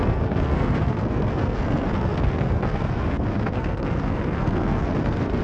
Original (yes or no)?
no